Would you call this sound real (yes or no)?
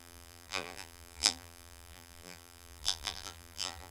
no